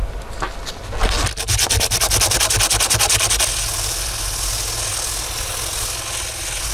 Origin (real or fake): real